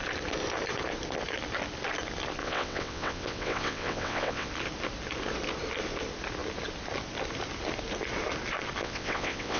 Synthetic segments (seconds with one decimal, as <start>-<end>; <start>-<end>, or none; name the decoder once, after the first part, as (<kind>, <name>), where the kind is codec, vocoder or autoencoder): 2.4-4.5 (vocoder, WaveNeXt); 8.8-9.6